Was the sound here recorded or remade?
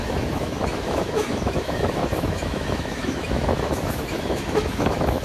remade